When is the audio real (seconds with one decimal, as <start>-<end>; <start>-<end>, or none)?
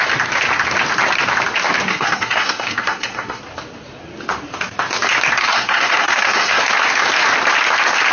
0.0-1.9; 3.4-5.4; 6.6-8.1